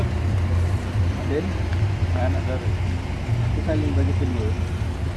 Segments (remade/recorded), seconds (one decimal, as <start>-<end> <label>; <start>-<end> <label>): 0.0-5.2 recorded